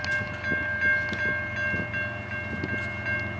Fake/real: real